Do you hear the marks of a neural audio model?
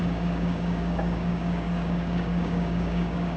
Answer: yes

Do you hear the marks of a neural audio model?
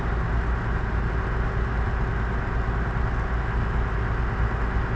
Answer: no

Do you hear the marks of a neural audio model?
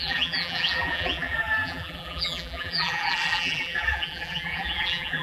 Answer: yes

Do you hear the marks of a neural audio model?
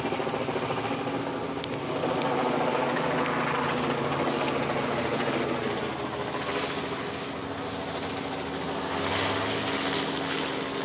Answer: no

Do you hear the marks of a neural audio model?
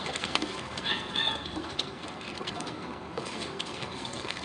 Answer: yes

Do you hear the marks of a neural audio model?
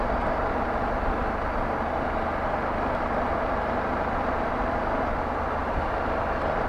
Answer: yes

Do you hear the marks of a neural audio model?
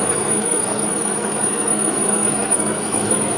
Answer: yes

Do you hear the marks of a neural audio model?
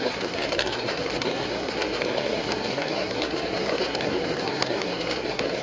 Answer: yes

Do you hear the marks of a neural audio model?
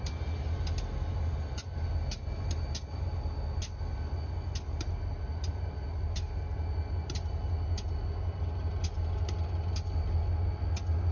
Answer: no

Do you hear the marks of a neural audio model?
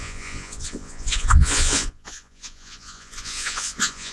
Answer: yes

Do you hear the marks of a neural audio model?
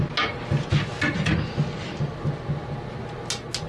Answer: no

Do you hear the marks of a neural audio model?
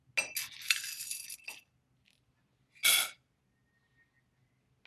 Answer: no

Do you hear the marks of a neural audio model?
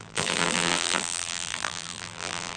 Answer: yes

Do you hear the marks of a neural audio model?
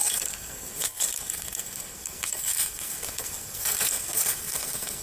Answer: yes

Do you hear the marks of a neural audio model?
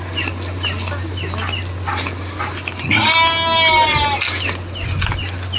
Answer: no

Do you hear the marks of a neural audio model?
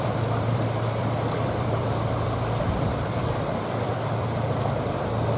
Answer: yes